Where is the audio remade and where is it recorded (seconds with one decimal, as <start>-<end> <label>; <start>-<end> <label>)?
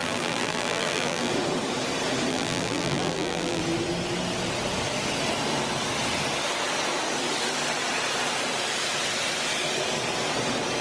0.0-1.3 remade; 1.3-2.3 recorded; 2.3-3.6 remade; 3.6-10.8 recorded